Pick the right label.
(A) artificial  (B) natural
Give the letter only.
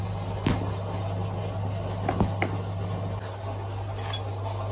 B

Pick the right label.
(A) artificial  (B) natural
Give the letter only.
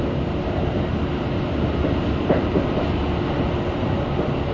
B